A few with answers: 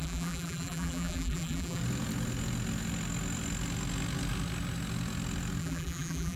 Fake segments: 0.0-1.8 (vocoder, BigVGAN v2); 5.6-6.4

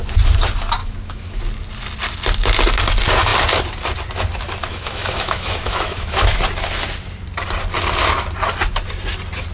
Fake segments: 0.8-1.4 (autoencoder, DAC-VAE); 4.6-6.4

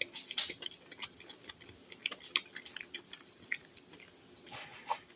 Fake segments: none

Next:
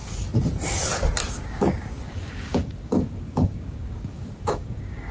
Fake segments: 1.3-5.1 (codec, DAC)

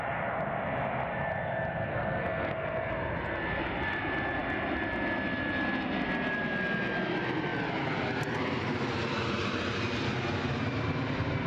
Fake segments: 1.9-2.9 (codec, SNAC)

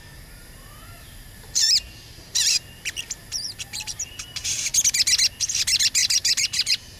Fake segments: 0.4-4.6 (vocoder, BigVGAN v2); 6.0-7.0

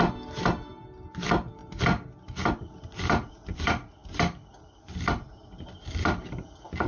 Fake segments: none

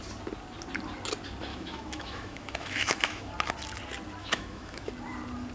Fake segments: 1.5-3.3 (autoencoder, DAC-VAE); 4.2-4.9